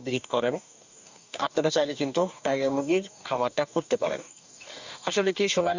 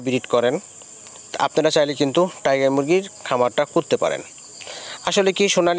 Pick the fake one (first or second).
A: first